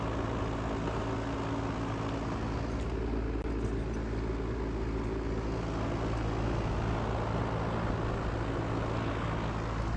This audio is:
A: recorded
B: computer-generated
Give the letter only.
A